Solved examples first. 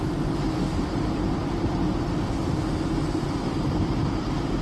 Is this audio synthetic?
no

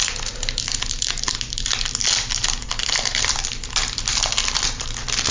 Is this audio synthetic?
no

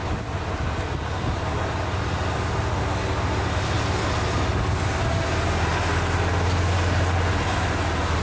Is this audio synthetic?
no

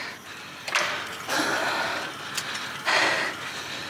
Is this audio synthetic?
no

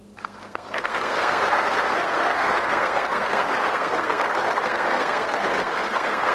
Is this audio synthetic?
yes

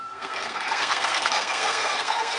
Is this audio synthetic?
yes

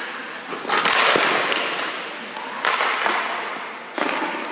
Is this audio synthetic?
no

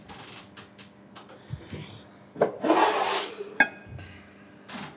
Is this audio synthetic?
no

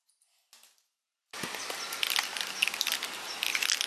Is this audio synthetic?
no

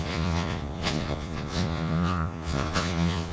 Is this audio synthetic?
yes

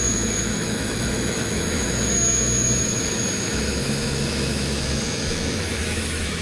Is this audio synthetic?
yes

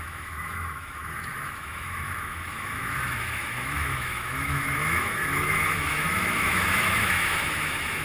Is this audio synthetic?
yes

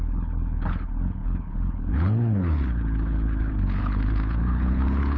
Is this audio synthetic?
yes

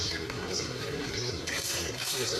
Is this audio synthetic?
yes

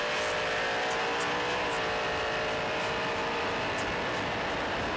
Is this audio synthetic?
no